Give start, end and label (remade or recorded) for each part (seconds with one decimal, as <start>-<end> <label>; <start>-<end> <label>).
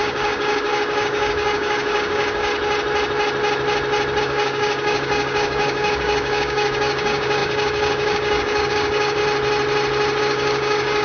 0.0-2.5 remade; 2.5-4.2 recorded; 4.2-9.2 remade; 9.2-10.2 recorded; 10.2-11.0 remade